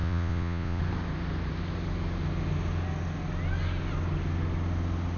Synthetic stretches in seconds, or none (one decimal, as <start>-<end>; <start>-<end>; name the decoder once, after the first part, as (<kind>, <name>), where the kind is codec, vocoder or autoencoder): 0.0-0.8 (vocoder, Vocos)